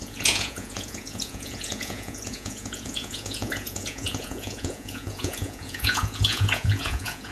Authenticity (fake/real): fake